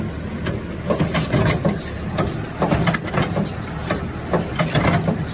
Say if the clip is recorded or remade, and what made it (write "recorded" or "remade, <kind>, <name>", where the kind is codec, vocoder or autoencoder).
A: remade, vocoder, BigVGAN v2